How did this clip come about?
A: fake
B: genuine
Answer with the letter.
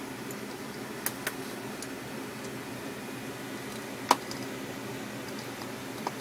B